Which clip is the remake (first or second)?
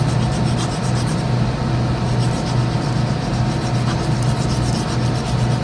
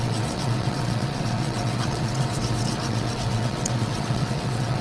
second